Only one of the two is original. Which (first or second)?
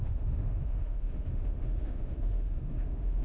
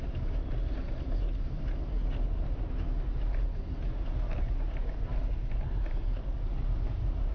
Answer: second